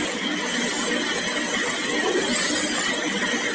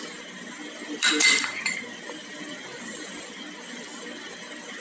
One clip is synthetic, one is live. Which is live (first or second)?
first